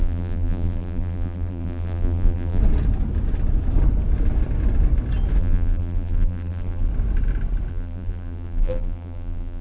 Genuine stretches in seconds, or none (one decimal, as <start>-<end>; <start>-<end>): 2.6-5.4; 6.9-7.7